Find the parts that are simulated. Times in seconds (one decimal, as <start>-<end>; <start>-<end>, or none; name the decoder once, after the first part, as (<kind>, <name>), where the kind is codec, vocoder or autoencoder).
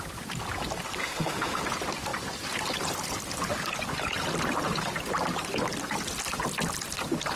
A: 1.0-1.6 (autoencoder, DAC-VAE)